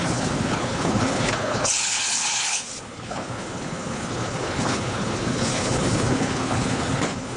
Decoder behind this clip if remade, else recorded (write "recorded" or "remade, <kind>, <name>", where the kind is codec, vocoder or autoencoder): remade, codec, HILCodec